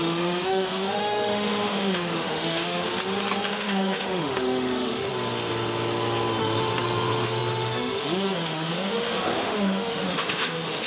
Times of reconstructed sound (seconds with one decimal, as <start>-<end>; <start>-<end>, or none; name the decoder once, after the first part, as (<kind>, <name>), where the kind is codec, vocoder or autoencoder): 0.0-2.8 (autoencoder, DAC-VAE); 3.5-5.1; 6.4-10.9